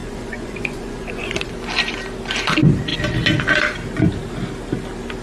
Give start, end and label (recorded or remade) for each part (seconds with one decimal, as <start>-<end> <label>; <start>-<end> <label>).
0.0-1.5 remade; 1.5-5.2 recorded